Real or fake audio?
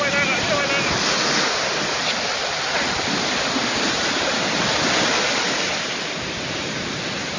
real